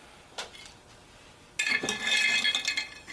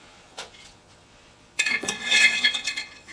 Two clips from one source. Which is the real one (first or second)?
first